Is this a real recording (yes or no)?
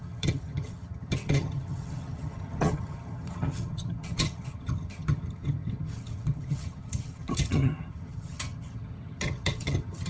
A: no